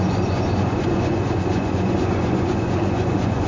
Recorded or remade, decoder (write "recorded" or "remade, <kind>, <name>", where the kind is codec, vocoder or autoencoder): remade, vocoder, Vocos